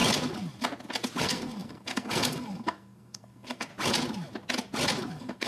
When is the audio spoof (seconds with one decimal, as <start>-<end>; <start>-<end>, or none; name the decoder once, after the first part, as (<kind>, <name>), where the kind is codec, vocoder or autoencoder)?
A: 1.2-3.7 (codec, SNAC); 5.1-5.5